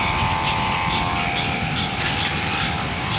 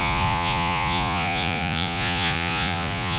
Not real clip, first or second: second